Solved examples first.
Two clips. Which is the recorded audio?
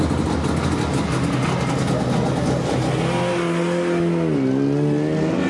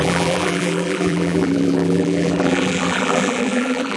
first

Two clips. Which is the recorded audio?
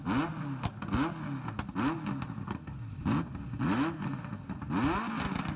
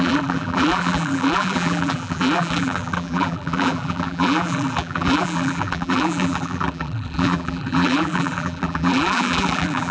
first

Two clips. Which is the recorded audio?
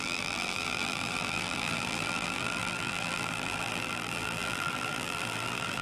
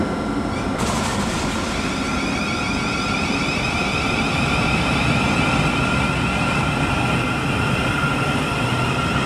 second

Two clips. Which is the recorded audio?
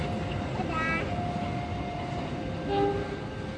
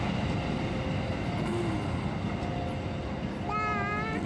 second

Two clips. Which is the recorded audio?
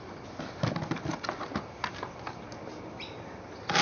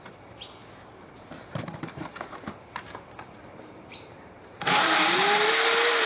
first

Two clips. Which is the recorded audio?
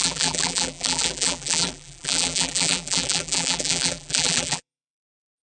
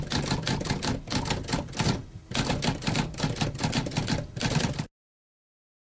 second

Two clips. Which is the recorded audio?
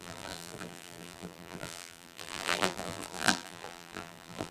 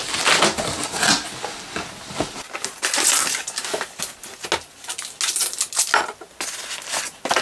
second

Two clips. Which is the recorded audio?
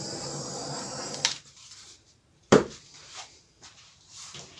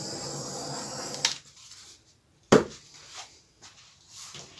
second